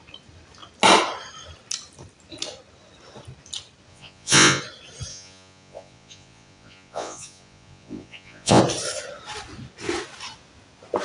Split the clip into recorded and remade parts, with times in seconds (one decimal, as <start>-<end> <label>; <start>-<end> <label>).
0.0-3.9 recorded; 3.9-4.6 remade; 4.6-5.1 recorded; 5.1-8.6 remade; 8.6-11.0 recorded